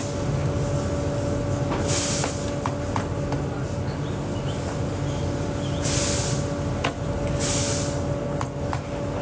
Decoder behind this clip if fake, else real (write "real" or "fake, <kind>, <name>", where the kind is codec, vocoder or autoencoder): real